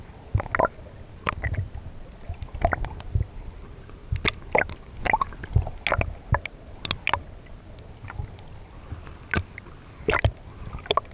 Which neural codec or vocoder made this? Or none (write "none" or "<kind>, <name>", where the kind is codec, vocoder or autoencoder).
none